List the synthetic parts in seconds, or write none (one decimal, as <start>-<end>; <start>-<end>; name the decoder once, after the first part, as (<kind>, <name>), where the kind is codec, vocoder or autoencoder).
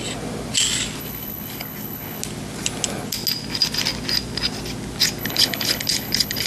1.0-2.2 (codec, HILCodec); 5.2-6.5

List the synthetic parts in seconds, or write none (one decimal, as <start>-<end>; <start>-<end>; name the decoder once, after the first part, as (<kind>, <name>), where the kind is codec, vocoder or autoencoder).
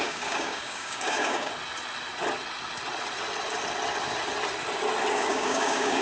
0.0-1.5 (codec, DAC); 5.1-6.0